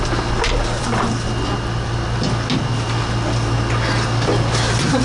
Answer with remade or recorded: recorded